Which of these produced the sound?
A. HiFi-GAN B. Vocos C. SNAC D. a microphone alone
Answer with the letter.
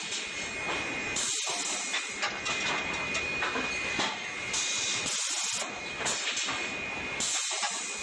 D